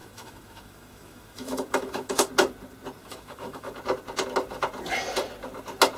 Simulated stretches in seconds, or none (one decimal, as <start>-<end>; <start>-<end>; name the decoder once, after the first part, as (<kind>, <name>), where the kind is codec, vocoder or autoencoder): 0.0-2.3 (autoencoder, DAC-VAE); 3.0-3.7